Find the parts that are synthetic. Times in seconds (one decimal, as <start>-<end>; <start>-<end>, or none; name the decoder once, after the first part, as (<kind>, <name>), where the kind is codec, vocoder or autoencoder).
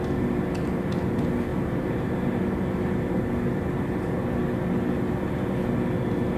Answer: 1.5-2.4 (vocoder, BigVGAN v2)